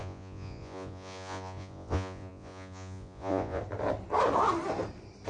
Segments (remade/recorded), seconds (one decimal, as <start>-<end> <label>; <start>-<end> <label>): 0.0-3.6 remade; 3.6-5.3 recorded